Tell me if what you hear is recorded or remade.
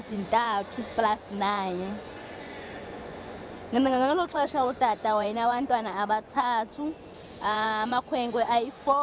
remade